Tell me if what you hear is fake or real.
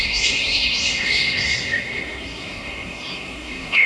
fake